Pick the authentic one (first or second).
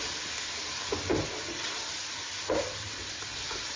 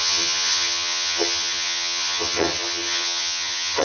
first